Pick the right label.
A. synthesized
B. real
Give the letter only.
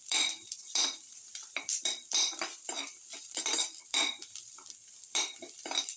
A